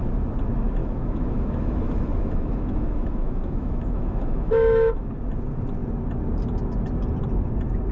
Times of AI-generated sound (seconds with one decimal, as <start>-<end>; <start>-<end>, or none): 0.8-5.1